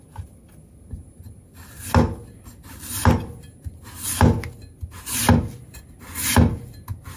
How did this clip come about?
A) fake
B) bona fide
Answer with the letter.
B